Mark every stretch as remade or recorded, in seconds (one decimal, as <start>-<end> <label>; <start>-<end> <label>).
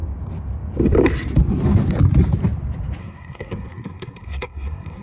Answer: 0.0-3.0 recorded; 3.0-5.0 remade